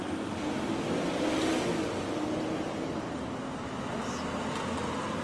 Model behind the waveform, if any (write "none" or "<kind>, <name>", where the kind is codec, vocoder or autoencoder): none